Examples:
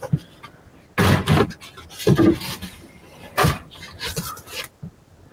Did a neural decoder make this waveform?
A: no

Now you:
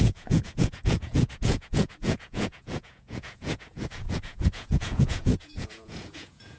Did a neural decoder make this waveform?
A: yes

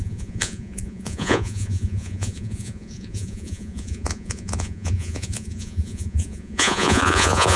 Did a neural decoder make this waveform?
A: yes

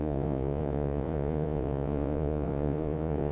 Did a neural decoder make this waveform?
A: yes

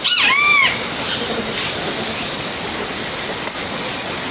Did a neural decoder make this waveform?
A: no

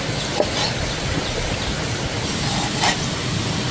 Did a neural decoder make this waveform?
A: no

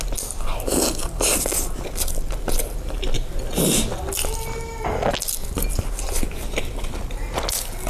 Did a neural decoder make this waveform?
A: no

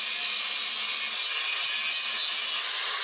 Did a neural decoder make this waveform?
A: no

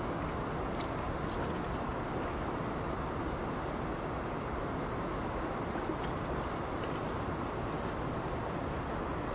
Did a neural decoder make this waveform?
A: no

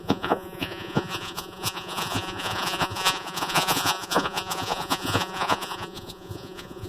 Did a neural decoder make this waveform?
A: yes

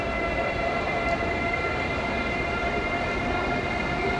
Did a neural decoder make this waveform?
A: no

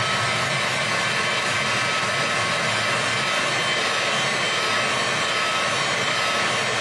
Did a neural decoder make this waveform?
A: no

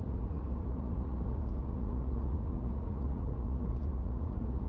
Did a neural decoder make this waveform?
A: yes